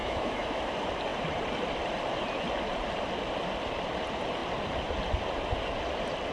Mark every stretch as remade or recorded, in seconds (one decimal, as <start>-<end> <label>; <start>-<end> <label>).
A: 0.0-0.6 remade; 0.6-6.3 recorded